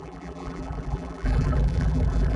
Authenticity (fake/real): fake